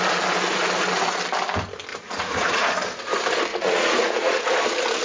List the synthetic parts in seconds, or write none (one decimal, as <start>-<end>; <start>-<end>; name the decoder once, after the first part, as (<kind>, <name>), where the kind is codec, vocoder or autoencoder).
1.9-2.7 (vocoder, Vocos); 3.5-4.5